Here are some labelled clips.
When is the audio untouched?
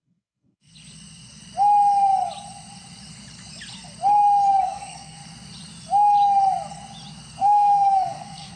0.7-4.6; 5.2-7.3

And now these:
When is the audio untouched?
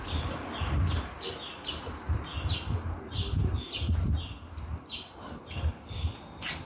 0.0-6.7